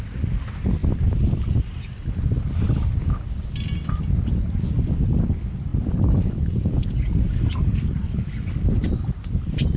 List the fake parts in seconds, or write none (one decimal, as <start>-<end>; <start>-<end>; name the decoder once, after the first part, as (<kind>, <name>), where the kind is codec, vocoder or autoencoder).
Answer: none